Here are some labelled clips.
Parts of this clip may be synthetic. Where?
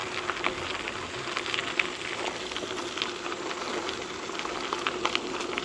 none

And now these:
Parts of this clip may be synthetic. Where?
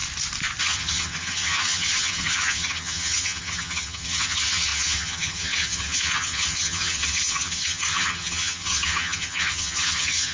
0.6-10.3 (vocoder, HiFi-GAN)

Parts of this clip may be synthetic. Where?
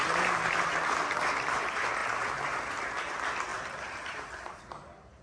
3.5-4.6 (vocoder, BigVGAN v2)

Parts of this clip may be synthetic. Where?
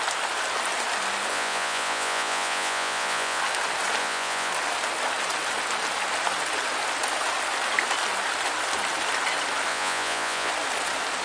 1.3-3.4 (vocoder, Vocos); 4.0-4.5; 9.7-10.5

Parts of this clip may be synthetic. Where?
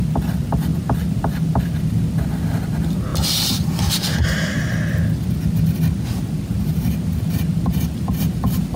none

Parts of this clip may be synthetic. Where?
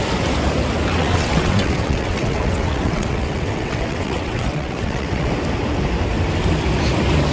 0.9-5.3 (vocoder, WaveNeXt)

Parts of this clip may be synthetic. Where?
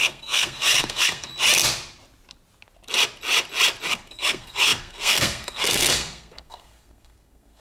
0.0-1.3 (codec, SNAC); 3.9-7.6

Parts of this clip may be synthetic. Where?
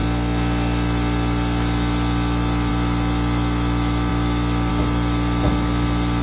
none